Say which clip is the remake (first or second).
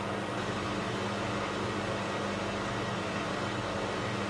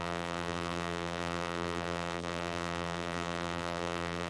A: second